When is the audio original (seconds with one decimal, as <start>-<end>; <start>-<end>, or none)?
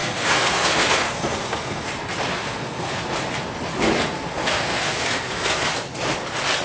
1.9-2.3; 3.0-4.3; 5.7-6.6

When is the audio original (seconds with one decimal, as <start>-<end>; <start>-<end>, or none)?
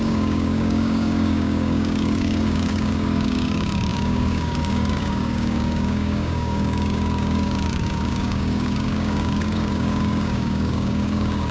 none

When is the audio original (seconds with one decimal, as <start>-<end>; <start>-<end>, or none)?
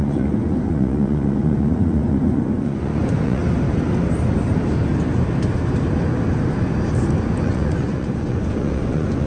3.4-7.4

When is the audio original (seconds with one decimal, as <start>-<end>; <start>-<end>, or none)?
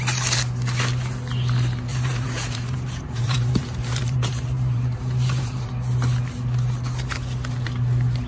0.0-1.9; 5.7-8.3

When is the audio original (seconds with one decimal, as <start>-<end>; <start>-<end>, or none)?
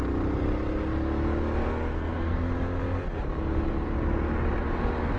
0.0-1.9; 2.5-5.2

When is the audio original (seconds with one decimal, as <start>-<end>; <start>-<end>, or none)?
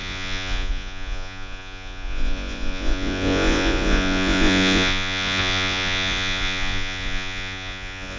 none